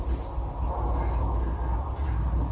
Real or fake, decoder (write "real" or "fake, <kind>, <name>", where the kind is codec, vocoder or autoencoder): real